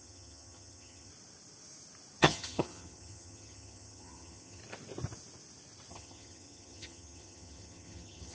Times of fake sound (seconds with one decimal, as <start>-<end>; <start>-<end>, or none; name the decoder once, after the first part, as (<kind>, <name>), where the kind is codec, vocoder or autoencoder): 0.0-1.1 (vocoder, HiFi-GAN); 2.2-4.6; 5.9-8.3